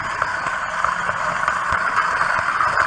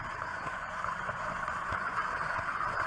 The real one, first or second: first